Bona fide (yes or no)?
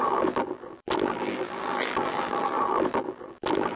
no